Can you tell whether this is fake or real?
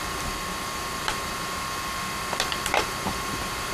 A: fake